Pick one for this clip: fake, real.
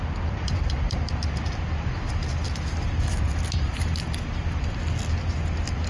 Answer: real